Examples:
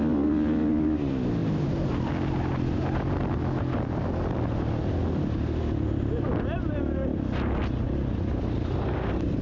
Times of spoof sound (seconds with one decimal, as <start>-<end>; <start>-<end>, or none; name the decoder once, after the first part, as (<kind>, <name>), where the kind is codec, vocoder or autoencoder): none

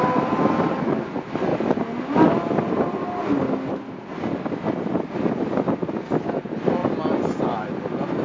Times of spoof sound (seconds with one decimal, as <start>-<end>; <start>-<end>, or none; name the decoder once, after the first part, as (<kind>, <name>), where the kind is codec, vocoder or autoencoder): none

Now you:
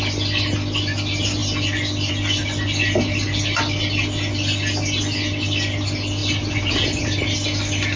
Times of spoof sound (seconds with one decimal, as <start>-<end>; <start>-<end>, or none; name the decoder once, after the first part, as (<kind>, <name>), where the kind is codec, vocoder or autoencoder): none

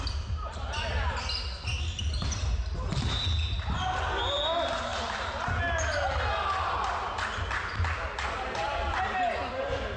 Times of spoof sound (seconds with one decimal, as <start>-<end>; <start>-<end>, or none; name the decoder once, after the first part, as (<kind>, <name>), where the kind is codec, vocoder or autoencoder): 4.9-5.5 (vocoder, BigVGAN v2)

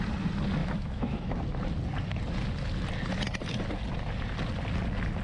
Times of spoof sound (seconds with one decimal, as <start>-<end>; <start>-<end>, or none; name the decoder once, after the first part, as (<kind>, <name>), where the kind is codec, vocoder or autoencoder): 0.6-1.4 (autoencoder, DAC-VAE)

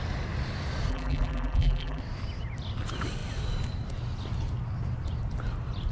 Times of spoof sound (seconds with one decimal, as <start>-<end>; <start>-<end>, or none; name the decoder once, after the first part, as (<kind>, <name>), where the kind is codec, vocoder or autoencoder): 0.9-2.0 (vocoder, BigVGAN v2)